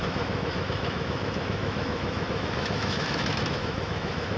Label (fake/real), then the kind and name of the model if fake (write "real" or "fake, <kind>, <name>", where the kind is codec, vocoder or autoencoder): fake, autoencoder, DAC-VAE